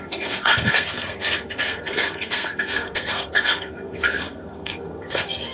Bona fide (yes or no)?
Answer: no